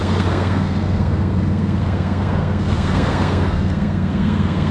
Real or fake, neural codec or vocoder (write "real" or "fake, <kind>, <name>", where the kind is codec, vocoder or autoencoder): fake, codec, SNAC